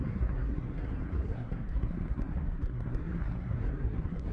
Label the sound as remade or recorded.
remade